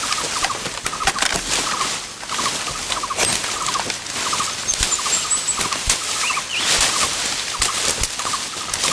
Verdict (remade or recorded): recorded